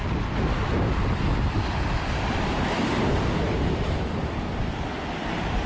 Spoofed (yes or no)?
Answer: yes